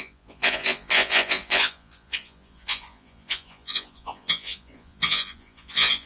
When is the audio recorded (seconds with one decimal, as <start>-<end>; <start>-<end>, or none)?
none